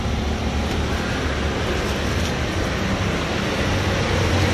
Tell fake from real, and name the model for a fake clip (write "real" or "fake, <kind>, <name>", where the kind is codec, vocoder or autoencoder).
real